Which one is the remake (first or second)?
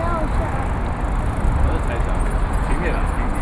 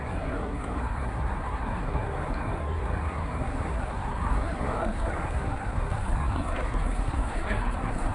second